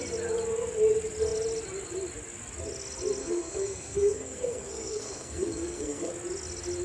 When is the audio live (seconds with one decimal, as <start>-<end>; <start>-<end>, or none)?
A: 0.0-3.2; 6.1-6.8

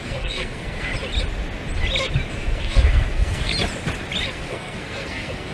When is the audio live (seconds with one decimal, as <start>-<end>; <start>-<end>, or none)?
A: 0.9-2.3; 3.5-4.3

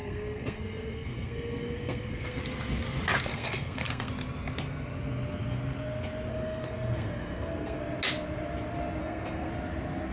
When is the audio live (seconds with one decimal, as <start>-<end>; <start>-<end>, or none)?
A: 2.4-3.3; 4.1-6.3; 7.8-9.0; 9.5-10.1

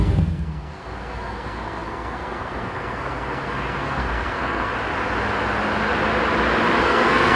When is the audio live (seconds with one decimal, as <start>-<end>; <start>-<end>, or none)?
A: 4.7-6.8

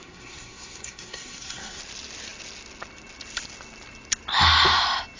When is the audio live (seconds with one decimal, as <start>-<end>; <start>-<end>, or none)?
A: 1.8-5.2

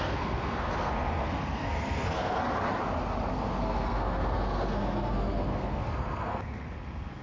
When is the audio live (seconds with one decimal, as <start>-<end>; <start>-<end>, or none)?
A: 2.4-3.3

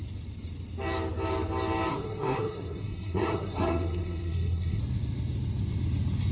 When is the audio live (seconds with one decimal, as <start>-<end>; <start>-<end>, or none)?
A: 0.0-1.9; 4.8-6.3

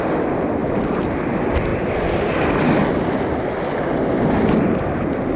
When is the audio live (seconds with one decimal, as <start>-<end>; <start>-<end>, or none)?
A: 0.0-5.4